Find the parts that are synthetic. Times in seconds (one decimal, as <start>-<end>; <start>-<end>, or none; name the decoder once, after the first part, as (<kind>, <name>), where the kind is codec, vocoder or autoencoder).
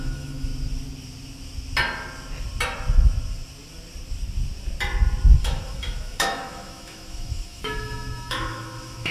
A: 0.0-0.5 (autoencoder, DAC-VAE); 5.4-9.1